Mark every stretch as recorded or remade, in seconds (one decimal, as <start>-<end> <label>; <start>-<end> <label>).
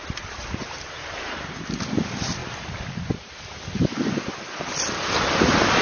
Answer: 0.0-0.6 remade; 0.6-1.0 recorded; 1.0-1.8 remade; 1.8-5.8 recorded